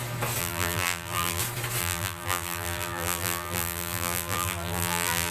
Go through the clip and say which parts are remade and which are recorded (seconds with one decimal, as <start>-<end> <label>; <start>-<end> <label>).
0.0-0.4 recorded; 0.4-1.4 remade; 1.4-1.8 recorded; 1.8-5.3 remade